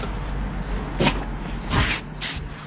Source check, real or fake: real